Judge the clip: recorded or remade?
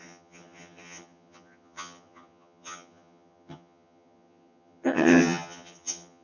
remade